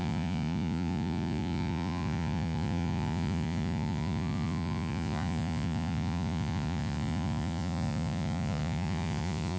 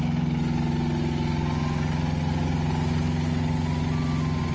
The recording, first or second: second